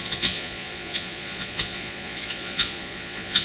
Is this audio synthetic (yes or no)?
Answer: yes